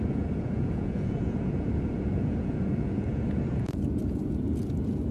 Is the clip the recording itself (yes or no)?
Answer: no